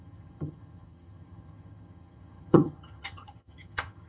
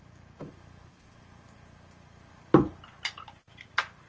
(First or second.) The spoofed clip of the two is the first